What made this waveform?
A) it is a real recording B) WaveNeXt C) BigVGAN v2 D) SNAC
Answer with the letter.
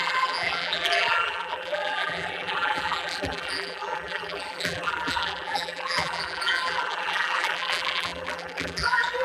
C